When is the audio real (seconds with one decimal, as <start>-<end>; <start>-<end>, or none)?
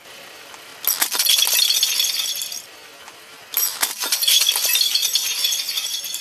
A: 0.0-6.2